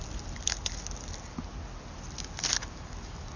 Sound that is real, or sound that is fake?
real